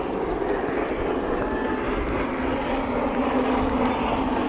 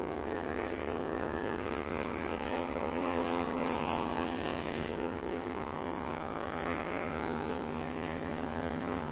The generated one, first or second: second